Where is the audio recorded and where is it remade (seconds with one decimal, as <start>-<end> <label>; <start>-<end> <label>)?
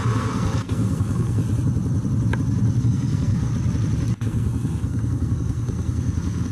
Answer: 0.0-1.4 remade; 1.4-2.8 recorded; 2.8-3.5 remade; 3.5-4.1 recorded; 4.1-6.5 remade